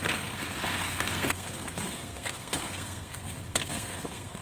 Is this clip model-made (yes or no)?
yes